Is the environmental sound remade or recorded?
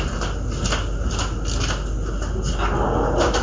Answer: recorded